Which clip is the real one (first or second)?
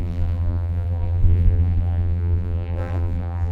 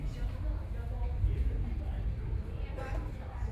second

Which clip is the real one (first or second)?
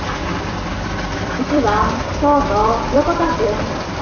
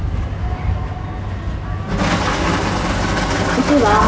second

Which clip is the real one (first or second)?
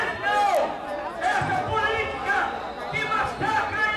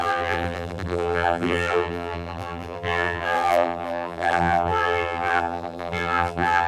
first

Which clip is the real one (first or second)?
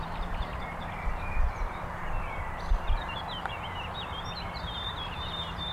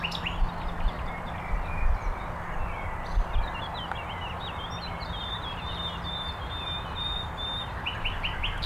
second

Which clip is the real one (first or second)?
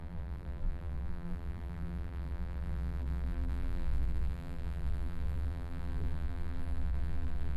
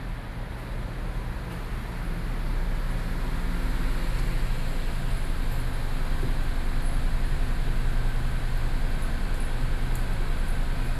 second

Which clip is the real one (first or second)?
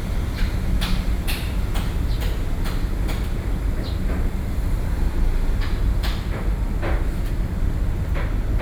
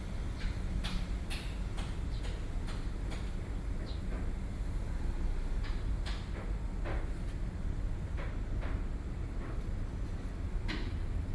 second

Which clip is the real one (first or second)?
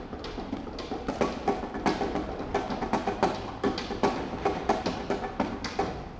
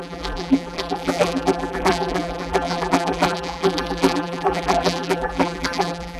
first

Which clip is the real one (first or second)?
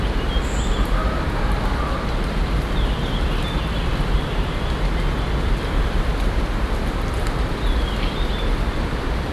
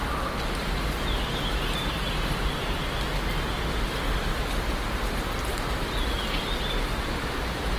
second